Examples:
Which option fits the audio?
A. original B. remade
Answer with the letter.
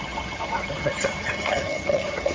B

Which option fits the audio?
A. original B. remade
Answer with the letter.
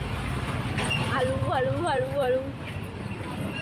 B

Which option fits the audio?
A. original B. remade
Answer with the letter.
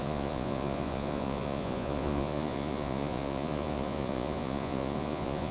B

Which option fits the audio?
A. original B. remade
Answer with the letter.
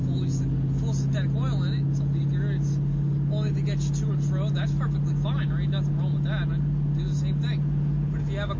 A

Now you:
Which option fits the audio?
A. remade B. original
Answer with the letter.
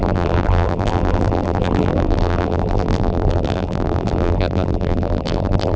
A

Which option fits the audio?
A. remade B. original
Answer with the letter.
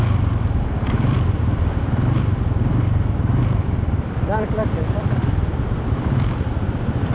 A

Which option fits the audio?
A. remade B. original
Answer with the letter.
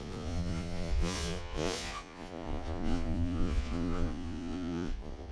A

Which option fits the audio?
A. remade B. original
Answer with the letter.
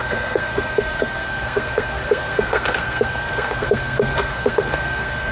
A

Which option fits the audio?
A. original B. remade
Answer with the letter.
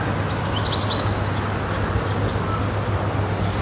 A